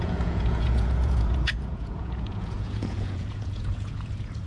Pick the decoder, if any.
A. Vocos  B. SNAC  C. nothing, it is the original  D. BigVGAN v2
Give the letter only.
A